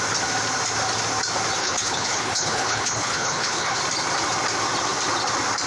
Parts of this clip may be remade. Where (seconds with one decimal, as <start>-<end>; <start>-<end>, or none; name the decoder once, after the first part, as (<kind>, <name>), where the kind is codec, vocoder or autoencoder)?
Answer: 1.6-3.8 (codec, HILCodec)